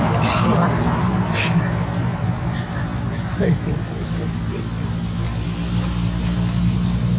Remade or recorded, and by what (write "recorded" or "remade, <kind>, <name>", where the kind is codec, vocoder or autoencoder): recorded